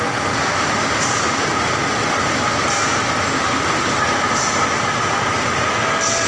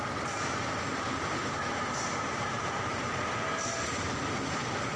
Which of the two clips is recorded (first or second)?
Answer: first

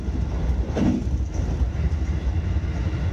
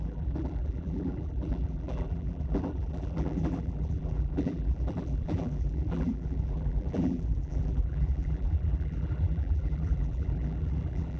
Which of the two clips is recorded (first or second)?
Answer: first